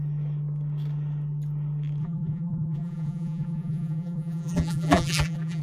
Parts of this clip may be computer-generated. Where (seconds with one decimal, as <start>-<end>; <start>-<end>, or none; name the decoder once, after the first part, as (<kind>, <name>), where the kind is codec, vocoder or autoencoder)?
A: 2.0-5.6 (vocoder, BigVGAN v2)